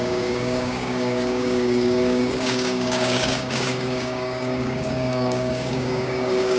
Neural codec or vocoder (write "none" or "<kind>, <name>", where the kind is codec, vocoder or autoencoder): codec, DAC